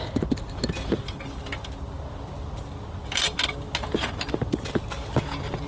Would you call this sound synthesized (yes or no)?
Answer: no